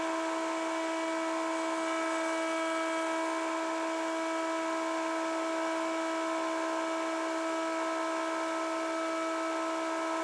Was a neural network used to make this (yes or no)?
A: no